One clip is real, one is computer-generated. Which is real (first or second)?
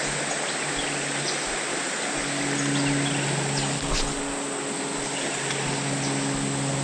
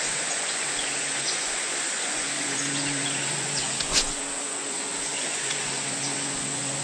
first